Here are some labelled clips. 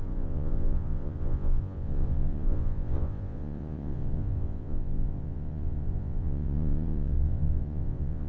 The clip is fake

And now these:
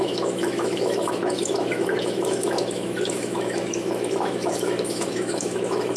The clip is fake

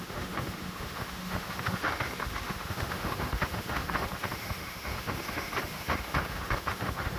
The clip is fake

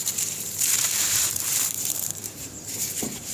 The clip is fake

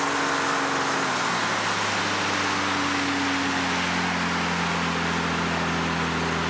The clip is real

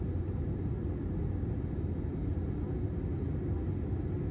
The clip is real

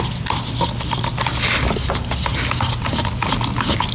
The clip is real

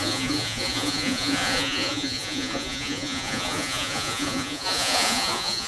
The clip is fake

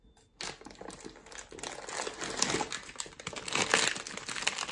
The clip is real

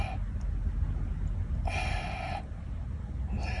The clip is real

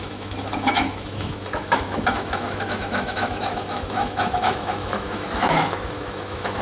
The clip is fake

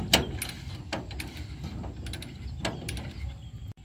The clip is real